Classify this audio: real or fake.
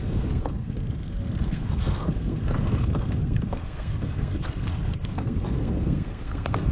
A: fake